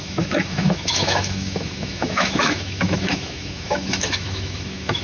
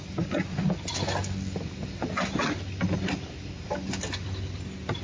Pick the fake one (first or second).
first